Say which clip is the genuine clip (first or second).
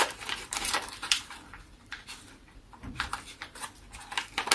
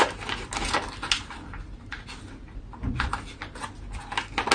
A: second